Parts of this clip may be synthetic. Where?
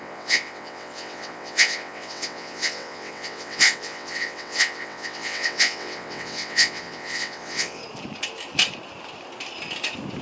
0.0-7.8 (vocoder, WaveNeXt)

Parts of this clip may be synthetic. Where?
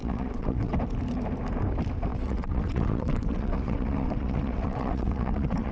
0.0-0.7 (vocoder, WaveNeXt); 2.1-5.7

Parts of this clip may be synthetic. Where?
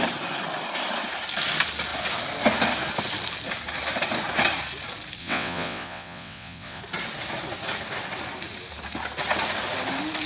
5.2-6.8 (vocoder, WaveNeXt)